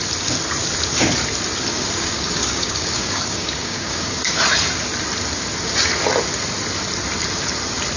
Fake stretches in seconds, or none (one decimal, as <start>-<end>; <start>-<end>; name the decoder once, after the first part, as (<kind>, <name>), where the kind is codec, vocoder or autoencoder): 1.7-4.4 (codec, DAC)